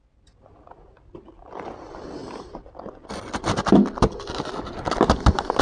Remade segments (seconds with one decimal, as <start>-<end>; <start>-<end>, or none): 2.2-5.0